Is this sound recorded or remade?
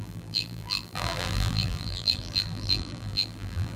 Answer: remade